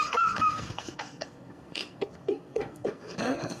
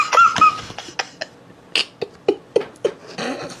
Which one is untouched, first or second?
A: second